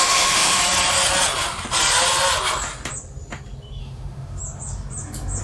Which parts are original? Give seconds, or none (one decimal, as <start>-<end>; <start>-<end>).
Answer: 0.6-3.8; 4.4-5.4